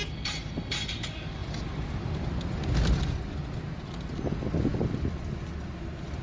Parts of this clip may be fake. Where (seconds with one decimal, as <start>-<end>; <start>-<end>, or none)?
none